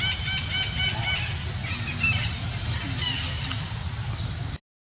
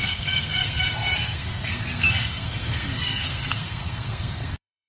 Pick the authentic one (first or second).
first